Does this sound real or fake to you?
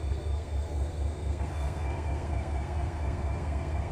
fake